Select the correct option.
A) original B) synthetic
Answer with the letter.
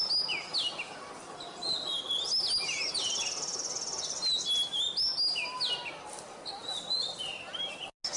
A